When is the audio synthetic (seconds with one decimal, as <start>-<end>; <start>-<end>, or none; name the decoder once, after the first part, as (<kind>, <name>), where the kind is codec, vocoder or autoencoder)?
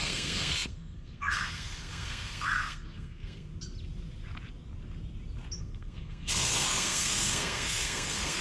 0.0-3.5 (codec, SNAC); 5.6-8.4